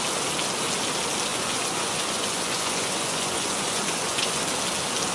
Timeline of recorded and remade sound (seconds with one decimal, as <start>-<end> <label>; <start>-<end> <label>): 0.0-1.3 recorded; 1.3-4.4 remade; 4.4-5.1 recorded